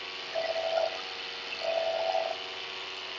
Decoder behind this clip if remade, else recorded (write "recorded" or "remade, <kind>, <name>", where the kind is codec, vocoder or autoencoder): recorded